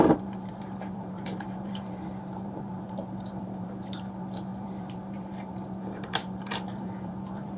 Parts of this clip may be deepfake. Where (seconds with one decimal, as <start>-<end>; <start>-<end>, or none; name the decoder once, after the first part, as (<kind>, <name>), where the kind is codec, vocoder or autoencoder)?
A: 0.0-7.6 (vocoder, BigVGAN v2)